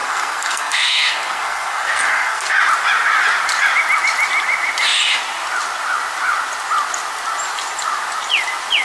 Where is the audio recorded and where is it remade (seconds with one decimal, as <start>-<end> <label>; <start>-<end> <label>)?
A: 0.0-2.5 remade; 2.5-8.8 recorded